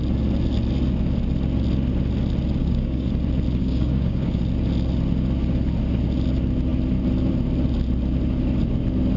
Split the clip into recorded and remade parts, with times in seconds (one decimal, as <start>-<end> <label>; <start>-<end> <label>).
0.0-2.6 recorded; 2.6-3.1 remade; 3.1-3.6 recorded; 3.6-4.4 remade; 4.4-9.2 recorded